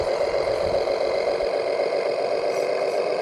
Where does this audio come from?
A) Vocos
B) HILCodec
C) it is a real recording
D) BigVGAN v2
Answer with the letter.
D